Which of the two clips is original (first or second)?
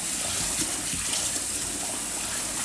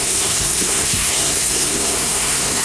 first